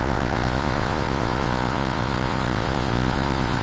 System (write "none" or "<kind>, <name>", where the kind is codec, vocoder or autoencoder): vocoder, Vocos